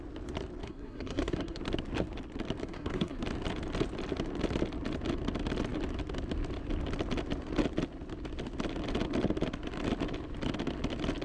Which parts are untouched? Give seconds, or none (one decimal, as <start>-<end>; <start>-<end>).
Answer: 0.0-0.6; 1.6-2.6; 3.2-11.2